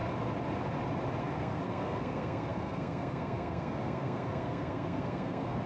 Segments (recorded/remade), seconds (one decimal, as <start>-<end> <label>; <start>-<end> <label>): 0.0-1.2 recorded; 1.2-5.7 remade